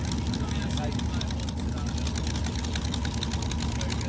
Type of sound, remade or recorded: recorded